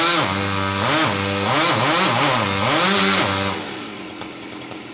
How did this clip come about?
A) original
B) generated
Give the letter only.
A